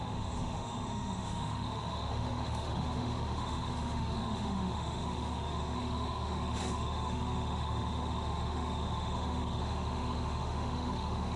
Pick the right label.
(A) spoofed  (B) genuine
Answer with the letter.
A